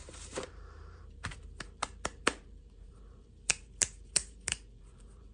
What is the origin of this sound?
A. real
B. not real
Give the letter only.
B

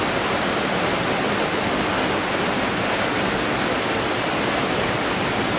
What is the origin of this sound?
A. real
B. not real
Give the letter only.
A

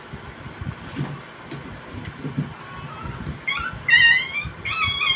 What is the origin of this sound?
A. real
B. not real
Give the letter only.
A